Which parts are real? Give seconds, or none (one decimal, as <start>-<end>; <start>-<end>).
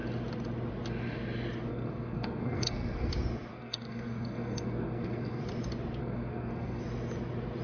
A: 0.0-1.7; 3.1-3.5; 5.4-6.0; 6.8-7.6